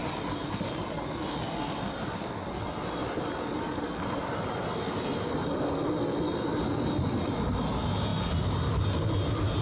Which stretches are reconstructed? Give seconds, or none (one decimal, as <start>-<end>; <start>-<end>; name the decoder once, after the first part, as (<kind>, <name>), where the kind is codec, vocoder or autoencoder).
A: none